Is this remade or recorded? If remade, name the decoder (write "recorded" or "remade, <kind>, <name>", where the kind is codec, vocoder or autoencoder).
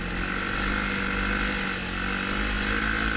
recorded